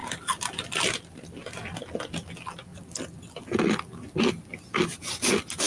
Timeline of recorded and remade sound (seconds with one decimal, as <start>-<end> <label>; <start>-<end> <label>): 0.0-5.7 recorded